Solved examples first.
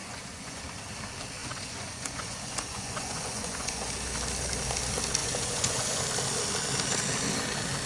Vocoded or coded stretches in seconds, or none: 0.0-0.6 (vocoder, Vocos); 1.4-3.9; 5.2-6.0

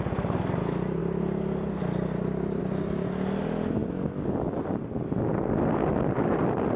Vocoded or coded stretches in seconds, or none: none